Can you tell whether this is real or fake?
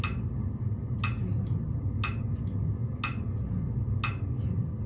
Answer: real